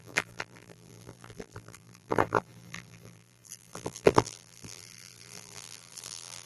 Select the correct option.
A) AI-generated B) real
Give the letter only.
A